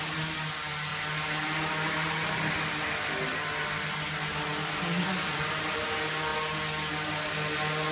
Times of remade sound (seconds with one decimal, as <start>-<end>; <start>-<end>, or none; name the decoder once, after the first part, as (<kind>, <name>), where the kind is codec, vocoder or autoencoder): none